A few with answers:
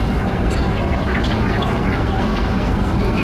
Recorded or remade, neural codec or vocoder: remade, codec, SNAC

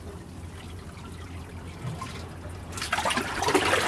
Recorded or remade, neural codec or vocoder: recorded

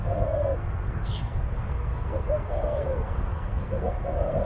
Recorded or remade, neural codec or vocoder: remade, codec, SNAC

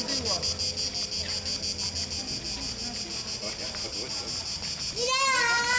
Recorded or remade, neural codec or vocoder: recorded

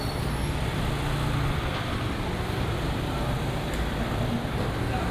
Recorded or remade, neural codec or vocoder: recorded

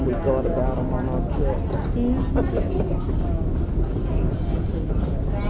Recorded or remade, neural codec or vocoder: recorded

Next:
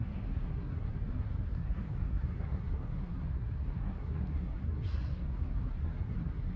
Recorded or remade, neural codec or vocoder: remade, codec, SNAC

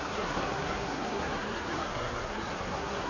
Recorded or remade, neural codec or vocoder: remade, codec, SNAC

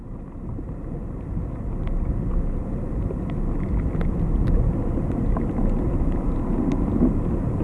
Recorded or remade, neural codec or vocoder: recorded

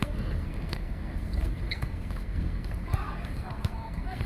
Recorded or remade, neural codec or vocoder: remade, codec, SNAC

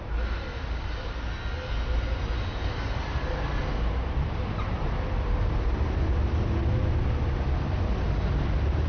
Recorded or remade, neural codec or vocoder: recorded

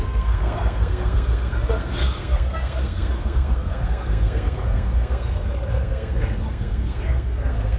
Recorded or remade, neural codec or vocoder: remade, codec, SNAC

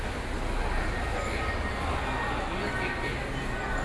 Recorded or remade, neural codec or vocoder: recorded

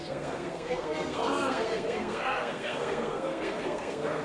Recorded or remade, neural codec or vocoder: remade, codec, SNAC